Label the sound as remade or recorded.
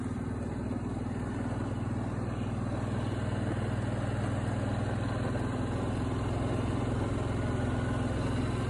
recorded